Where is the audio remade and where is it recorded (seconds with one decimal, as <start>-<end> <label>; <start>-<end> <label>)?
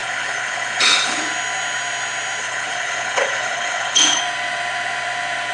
0.0-1.2 remade; 1.2-2.4 recorded; 2.4-4.2 remade; 4.2-5.5 recorded